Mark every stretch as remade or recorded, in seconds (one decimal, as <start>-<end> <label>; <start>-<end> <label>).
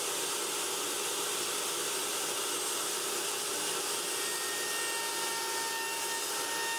0.0-6.8 recorded